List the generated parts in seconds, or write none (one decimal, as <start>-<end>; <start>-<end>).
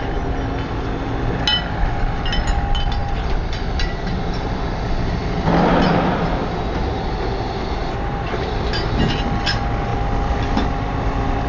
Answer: 3.0-3.7; 7.8-8.7